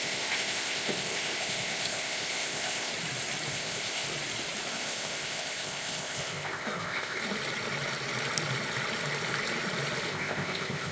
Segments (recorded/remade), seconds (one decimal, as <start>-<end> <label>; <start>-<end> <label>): 0.0-2.9 remade; 2.9-3.5 recorded; 3.5-4.1 remade; 4.1-4.7 recorded; 4.7-7.2 remade; 7.2-10.1 recorded; 10.1-10.9 remade